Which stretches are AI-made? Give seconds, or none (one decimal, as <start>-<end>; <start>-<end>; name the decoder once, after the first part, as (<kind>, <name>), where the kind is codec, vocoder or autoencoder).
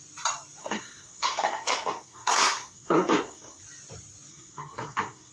0.6-3.6 (codec, SNAC); 4.3-5.3